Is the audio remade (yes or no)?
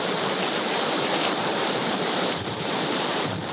yes